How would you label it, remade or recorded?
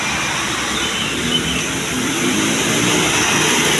recorded